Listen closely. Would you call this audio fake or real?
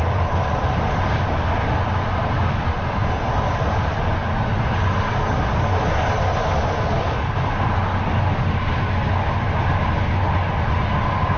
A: real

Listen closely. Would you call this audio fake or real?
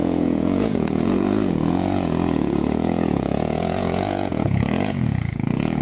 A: fake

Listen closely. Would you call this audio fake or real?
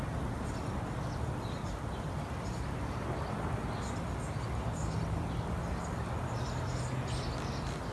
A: real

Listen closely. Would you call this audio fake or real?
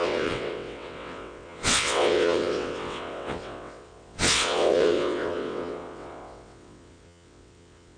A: fake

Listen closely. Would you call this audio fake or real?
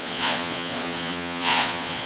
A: fake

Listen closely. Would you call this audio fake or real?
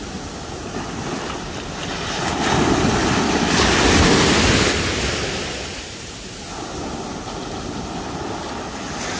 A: real